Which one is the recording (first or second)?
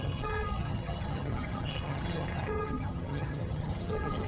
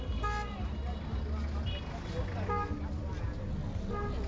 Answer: second